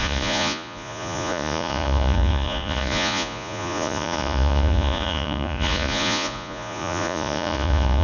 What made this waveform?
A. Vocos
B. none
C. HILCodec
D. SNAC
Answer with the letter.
A